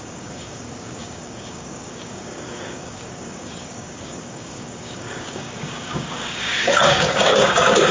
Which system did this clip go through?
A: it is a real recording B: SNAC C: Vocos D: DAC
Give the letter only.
D